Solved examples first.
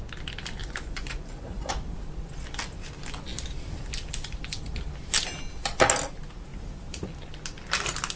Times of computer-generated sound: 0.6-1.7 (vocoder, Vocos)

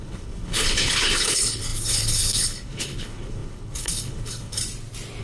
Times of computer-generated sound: 0.0-4.6 (codec, HILCodec)

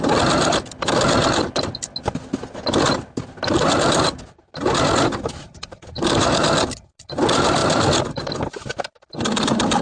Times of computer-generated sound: none

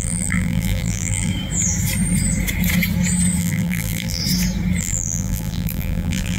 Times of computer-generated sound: 0.0-1.3 (vocoder, BigVGAN v2); 3.4-4.2; 4.8-6.4

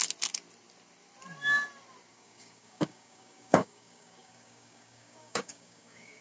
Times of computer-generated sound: 2.1-6.2 (codec, DAC)

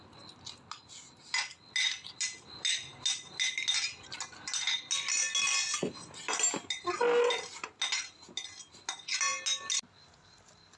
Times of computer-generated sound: none